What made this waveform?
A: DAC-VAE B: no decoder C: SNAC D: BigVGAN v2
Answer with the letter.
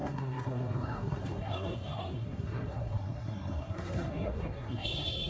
C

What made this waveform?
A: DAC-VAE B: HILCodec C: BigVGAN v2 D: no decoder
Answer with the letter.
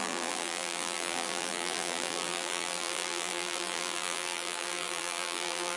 C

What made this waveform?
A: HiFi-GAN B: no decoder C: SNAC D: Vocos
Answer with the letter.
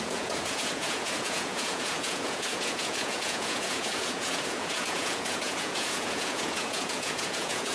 D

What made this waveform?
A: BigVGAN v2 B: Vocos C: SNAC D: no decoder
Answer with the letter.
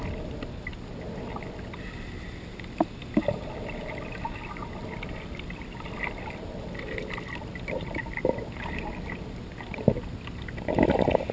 D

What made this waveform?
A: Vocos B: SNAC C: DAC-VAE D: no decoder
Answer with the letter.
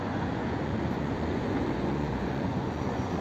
A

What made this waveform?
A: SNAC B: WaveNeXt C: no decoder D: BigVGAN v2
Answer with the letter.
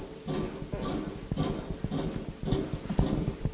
C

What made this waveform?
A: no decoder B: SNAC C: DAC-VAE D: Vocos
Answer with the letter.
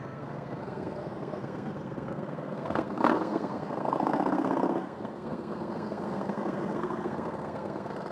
B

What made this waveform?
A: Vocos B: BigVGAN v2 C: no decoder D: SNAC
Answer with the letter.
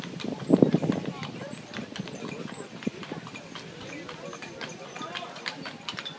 C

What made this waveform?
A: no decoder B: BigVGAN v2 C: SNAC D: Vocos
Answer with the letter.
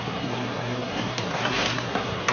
C